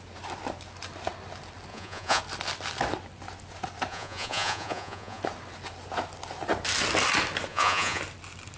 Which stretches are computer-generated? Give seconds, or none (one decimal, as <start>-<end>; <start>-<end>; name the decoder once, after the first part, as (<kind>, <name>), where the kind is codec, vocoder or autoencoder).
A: 1.7-2.2 (vocoder, Vocos); 3.9-5.2; 7.5-8.0